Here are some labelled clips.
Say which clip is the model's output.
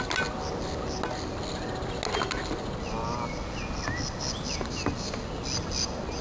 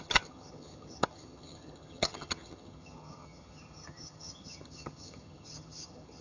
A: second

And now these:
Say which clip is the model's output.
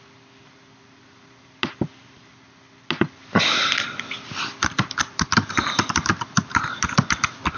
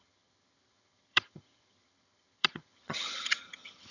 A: second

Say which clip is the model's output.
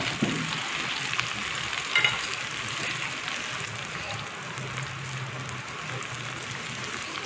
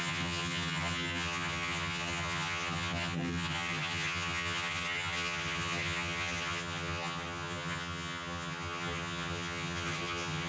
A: second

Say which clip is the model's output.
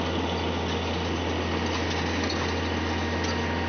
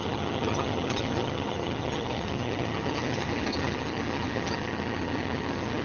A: second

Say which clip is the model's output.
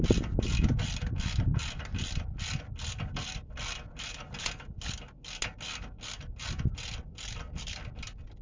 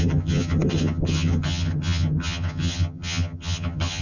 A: second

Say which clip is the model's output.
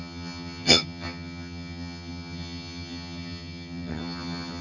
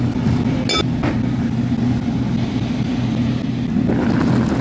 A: first